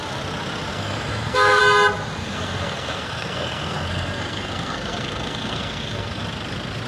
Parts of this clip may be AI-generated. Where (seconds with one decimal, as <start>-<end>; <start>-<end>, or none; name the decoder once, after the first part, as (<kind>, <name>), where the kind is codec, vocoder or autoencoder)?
0.7-1.6 (codec, SNAC); 2.2-6.2